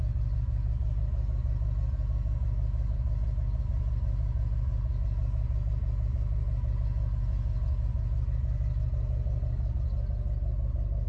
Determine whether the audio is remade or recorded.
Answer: recorded